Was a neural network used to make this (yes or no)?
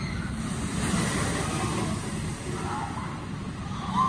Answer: no